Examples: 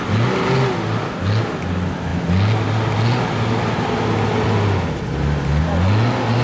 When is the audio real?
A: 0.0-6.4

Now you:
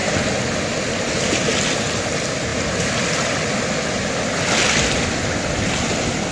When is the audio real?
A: 0.0-6.3

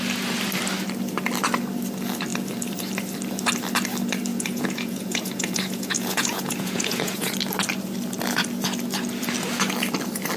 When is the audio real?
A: 0.0-4.3; 7.3-10.4